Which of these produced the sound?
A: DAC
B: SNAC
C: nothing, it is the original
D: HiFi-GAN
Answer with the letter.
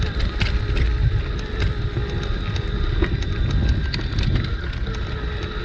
C